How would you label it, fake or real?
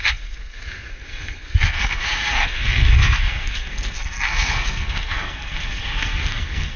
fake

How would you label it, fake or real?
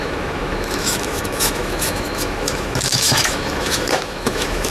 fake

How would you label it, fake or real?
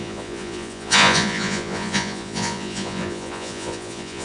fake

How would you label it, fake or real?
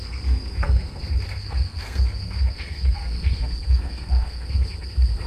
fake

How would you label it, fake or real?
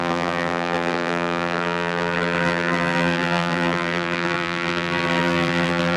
fake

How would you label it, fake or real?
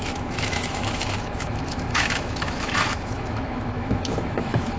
fake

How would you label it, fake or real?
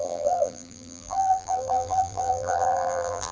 fake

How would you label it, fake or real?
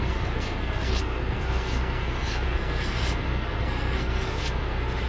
fake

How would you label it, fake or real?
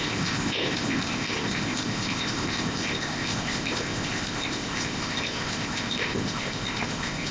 fake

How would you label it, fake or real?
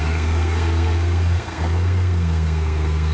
fake